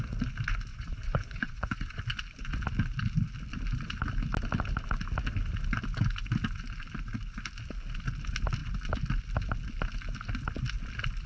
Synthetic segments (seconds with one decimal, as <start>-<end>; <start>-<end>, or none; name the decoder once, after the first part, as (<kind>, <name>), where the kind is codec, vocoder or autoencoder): 0.7-2.0 (vocoder, Vocos)